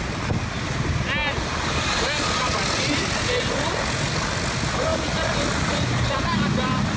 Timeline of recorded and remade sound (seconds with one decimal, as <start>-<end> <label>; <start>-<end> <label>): 0.0-7.0 recorded